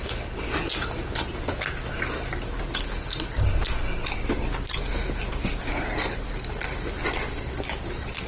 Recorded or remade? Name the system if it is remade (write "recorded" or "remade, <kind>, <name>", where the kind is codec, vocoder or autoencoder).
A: recorded